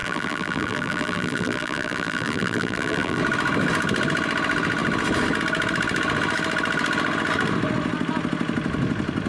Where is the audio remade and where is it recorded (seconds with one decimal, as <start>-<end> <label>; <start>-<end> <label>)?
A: 0.0-3.2 remade; 3.2-9.3 recorded